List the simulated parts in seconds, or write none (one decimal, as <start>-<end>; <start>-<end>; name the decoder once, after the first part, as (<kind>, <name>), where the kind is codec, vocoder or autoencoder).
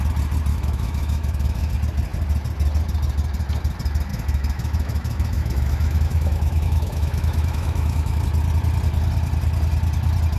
0.5-1.7 (autoencoder, DAC-VAE); 4.1-8.2